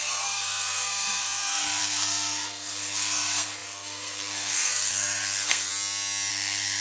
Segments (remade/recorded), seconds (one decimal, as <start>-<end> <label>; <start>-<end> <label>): 0.0-5.7 remade; 5.7-6.3 recorded; 6.3-6.8 remade